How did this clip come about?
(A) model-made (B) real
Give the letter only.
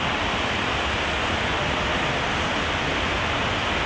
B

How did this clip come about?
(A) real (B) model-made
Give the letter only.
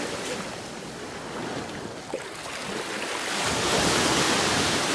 A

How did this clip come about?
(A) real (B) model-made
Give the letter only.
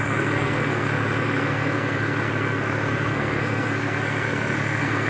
B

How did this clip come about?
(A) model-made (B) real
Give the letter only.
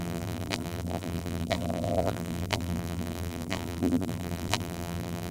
A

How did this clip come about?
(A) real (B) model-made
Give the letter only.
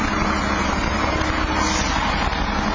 A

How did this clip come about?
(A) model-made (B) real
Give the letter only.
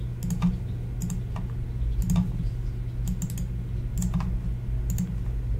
B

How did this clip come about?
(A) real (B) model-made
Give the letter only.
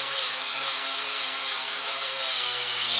B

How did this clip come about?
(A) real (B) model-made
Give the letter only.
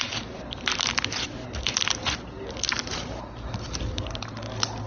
A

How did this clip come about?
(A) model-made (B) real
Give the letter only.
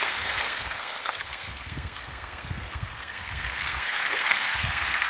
A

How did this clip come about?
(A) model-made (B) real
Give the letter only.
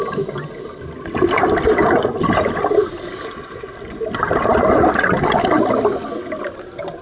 B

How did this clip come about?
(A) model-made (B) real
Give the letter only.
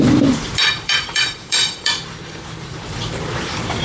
A